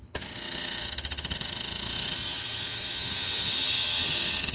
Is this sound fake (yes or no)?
yes